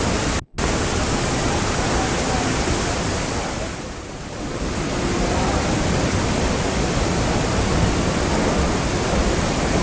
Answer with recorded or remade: recorded